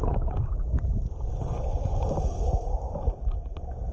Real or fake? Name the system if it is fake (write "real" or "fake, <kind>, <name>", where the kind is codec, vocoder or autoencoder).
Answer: real